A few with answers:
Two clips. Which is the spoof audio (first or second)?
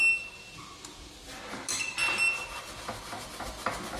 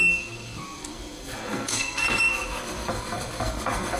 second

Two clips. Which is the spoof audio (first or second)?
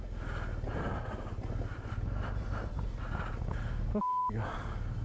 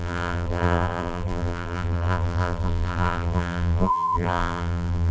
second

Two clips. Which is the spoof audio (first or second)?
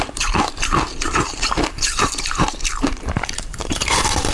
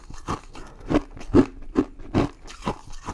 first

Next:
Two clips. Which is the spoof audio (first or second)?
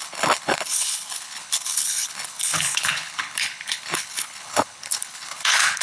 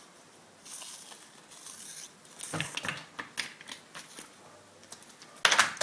first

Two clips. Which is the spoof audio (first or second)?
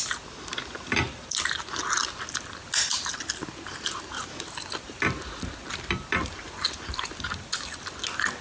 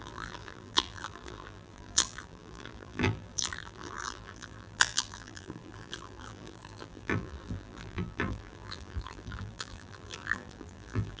second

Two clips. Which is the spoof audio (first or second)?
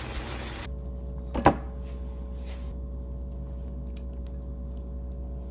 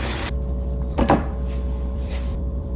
second